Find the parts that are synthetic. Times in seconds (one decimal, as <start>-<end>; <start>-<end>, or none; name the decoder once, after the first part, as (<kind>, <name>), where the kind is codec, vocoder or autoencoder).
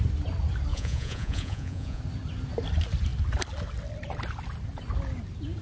0.7-2.0 (vocoder, Vocos)